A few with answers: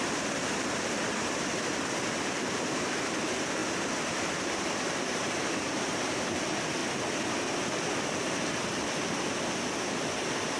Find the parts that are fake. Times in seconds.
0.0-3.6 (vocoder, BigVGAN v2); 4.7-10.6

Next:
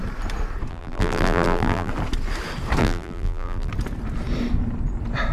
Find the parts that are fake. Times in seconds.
0.7-1.9 (vocoder, BigVGAN v2); 2.8-3.7

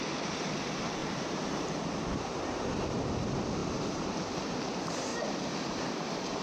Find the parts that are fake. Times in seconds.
1.0-2.8 (vocoder, BigVGAN v2); 3.6-4.5; 5.1-5.9

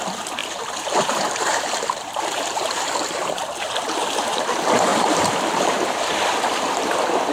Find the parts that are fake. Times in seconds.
0.4-3.4 (vocoder, BigVGAN v2); 4.9-5.7